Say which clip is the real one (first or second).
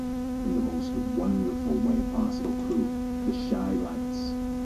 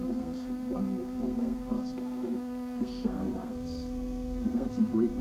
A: first